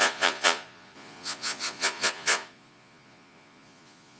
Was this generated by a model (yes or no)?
yes